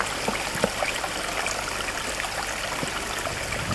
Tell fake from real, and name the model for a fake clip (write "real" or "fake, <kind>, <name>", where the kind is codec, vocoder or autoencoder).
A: real